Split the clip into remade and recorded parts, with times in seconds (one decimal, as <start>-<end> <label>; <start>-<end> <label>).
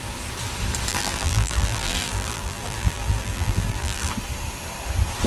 0.0-0.9 recorded; 0.9-4.1 remade; 4.1-5.3 recorded